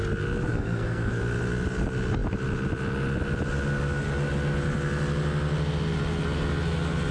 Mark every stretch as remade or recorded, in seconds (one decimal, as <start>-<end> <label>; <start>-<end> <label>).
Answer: 0.0-0.5 recorded; 0.5-1.2 remade; 1.2-7.1 recorded